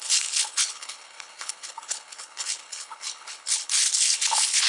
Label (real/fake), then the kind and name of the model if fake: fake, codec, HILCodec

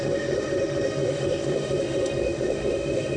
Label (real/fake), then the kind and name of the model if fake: fake, autoencoder, DAC-VAE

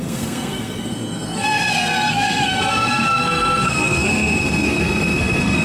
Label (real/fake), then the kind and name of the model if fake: fake, codec, SNAC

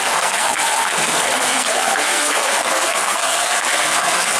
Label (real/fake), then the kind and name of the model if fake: fake, codec, SNAC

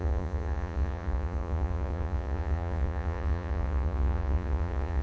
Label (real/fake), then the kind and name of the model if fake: fake, vocoder, Vocos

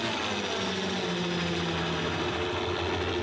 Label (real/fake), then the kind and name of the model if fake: real